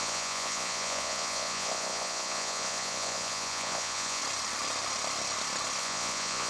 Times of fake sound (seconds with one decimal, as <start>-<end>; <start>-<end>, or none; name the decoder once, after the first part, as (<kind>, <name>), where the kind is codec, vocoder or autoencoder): 0.0-4.2 (vocoder, Vocos); 5.8-6.5